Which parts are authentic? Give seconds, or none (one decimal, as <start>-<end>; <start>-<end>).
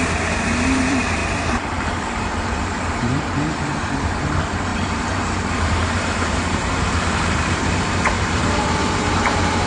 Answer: 1.2-1.9